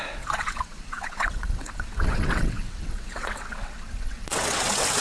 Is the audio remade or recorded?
remade